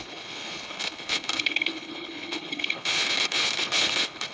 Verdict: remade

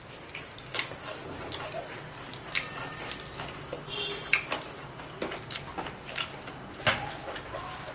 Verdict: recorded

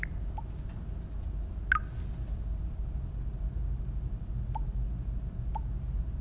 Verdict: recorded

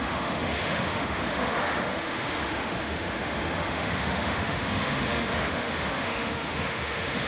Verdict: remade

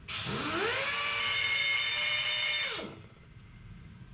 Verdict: recorded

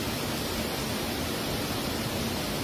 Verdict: recorded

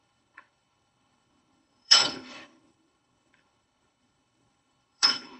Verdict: remade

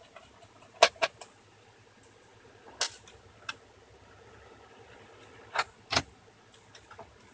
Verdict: recorded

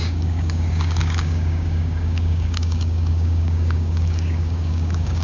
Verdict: remade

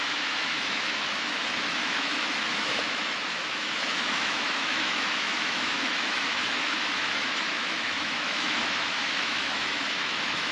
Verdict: remade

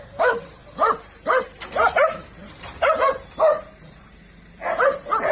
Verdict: recorded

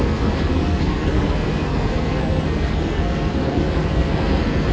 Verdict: remade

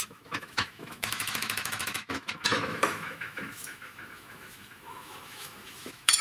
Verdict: remade